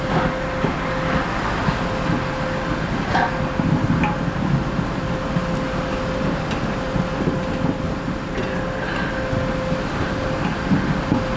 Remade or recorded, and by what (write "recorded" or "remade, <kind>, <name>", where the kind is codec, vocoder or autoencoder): recorded